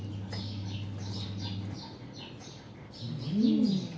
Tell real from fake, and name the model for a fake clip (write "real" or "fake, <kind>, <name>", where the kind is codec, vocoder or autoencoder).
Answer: real